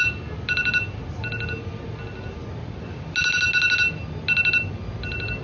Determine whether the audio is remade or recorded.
recorded